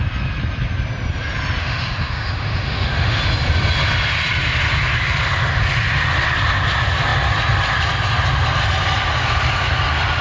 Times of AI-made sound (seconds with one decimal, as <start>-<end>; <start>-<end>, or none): 1.6-3.2